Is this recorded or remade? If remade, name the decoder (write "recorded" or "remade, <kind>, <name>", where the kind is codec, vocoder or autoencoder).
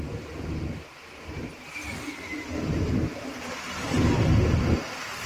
recorded